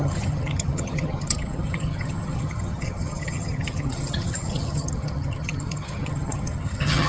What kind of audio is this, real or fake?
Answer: fake